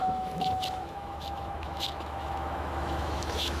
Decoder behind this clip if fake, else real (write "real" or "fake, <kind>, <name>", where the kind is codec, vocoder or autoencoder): fake, autoencoder, DAC-VAE